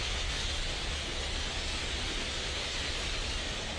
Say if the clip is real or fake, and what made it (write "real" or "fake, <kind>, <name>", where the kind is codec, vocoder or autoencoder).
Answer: real